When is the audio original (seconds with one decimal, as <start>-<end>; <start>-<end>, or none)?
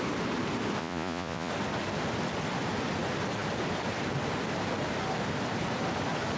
0.0-0.8; 1.5-6.4